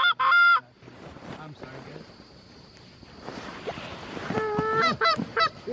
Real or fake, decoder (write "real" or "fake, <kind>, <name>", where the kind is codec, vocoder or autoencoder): fake, vocoder, BigVGAN v2